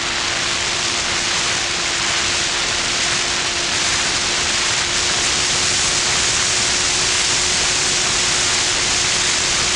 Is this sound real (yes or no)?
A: yes